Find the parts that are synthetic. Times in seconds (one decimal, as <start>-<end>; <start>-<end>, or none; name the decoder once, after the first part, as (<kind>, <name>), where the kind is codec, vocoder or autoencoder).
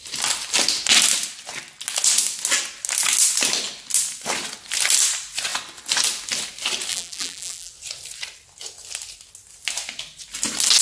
6.9-7.7 (vocoder, BigVGAN v2)